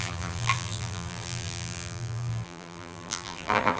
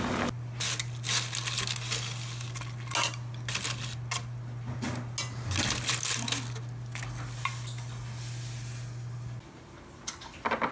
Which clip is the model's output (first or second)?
first